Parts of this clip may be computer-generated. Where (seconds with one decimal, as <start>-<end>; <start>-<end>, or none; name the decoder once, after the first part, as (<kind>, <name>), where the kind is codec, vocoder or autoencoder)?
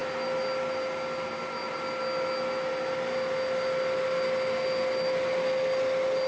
none